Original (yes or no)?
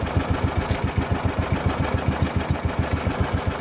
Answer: yes